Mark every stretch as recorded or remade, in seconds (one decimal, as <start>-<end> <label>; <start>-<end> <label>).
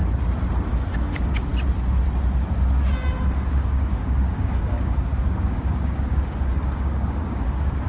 0.0-0.7 recorded; 0.7-1.5 remade; 1.5-3.5 recorded; 3.5-7.9 remade